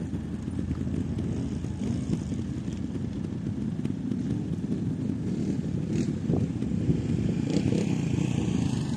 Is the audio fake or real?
real